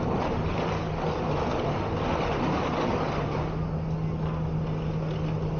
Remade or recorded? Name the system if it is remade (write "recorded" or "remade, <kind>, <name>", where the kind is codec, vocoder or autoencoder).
recorded